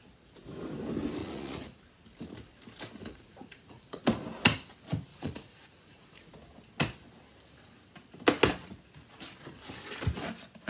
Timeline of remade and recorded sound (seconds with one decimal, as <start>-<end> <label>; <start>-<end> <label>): 0.0-1.2 recorded; 1.2-1.8 remade; 1.8-3.0 recorded; 3.0-4.0 remade; 4.0-5.1 recorded; 5.1-6.3 remade; 6.3-10.7 recorded